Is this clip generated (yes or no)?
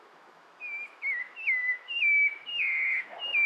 yes